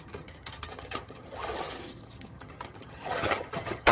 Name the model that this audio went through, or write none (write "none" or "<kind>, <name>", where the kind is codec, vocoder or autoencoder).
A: vocoder, HiFi-GAN